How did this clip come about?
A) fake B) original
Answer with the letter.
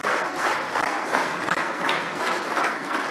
A